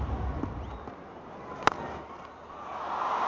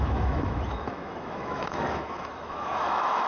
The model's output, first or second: second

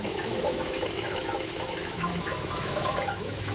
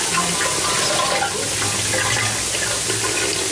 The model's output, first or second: first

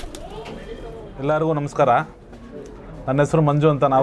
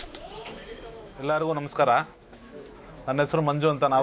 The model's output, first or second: second